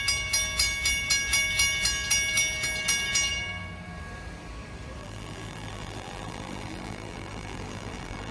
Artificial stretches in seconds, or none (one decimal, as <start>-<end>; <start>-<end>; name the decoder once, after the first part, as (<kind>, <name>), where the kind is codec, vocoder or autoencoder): 5.0-8.3 (vocoder, BigVGAN v2)